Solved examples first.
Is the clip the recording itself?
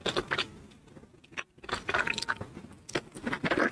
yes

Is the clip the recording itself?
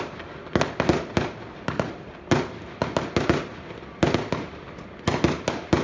yes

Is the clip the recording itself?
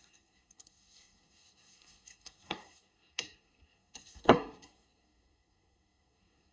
no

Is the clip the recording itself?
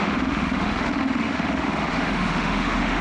no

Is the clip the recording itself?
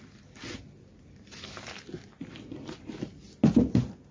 yes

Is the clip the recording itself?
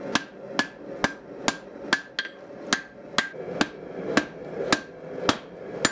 yes